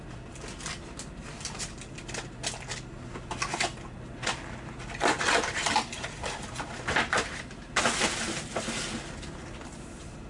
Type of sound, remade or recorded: recorded